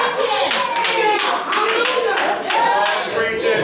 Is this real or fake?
real